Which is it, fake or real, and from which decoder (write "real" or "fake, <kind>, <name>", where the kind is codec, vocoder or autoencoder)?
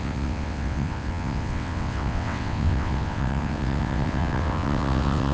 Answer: fake, vocoder, WaveNeXt